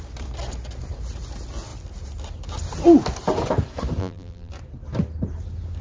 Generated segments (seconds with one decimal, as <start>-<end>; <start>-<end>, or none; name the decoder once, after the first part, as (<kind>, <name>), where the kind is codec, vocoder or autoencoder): 4.0-4.5 (vocoder, BigVGAN v2)